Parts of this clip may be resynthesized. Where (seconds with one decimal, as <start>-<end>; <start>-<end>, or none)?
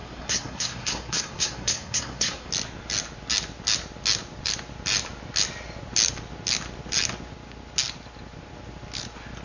0.0-2.5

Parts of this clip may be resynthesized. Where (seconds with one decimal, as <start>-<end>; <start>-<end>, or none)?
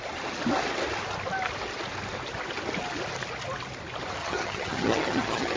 4.2-5.6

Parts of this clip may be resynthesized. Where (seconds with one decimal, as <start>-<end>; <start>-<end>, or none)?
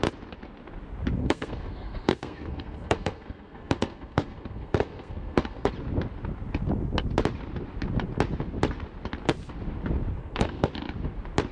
1.2-5.7; 10.2-10.7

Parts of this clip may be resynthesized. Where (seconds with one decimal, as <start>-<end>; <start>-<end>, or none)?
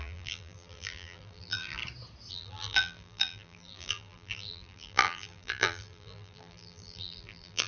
0.0-1.8; 2.3-7.7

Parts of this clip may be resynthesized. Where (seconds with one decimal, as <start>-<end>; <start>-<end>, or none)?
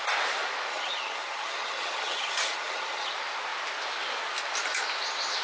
0.7-3.1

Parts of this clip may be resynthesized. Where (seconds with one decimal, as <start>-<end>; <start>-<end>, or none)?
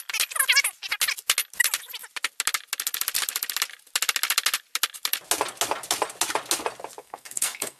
7.0-7.8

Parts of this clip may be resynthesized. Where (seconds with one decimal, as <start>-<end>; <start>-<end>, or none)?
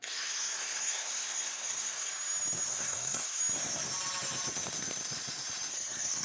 0.0-2.1; 2.7-3.4; 5.7-6.2